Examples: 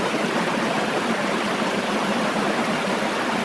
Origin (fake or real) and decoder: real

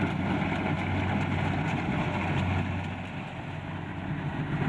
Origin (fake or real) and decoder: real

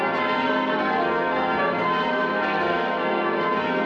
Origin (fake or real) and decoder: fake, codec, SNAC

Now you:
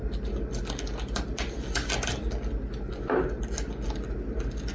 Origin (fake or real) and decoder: real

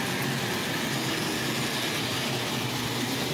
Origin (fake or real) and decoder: real